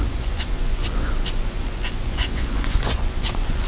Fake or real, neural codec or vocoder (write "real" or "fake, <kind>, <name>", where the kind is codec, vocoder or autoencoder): fake, vocoder, Vocos